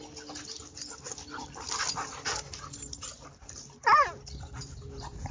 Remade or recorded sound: remade